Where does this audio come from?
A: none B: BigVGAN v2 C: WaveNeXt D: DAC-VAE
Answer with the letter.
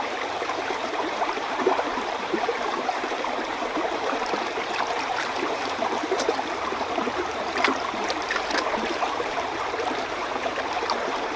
B